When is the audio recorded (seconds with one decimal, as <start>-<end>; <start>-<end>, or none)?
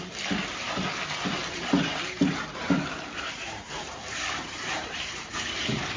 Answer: 0.0-1.9; 5.5-6.0